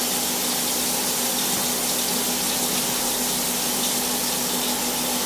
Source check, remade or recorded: recorded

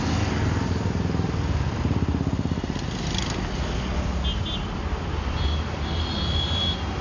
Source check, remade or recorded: recorded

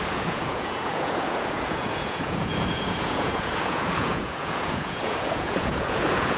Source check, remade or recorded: remade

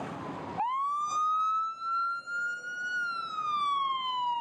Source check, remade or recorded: recorded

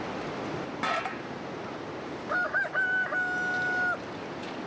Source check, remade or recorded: recorded